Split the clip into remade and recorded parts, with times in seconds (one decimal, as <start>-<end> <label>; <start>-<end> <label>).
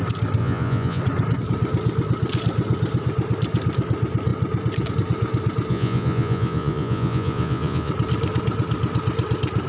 0.0-0.4 recorded; 0.4-1.0 remade; 1.0-5.7 recorded; 5.7-7.9 remade; 7.9-9.7 recorded